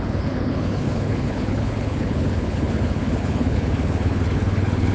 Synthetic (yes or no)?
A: yes